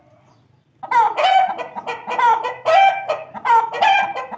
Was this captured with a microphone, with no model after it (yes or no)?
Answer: yes